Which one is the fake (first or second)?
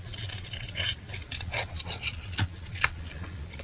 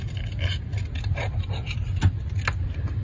first